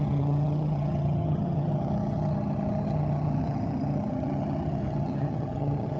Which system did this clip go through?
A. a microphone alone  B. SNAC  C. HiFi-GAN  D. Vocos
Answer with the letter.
C